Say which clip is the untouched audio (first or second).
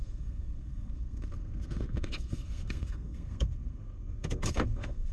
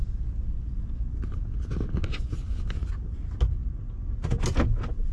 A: second